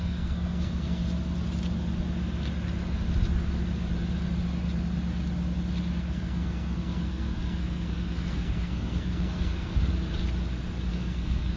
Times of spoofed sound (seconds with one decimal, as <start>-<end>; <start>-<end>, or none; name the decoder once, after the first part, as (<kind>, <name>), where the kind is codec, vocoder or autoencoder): 0.0-1.0 (codec, SNAC); 6.0-9.9; 10.9-11.6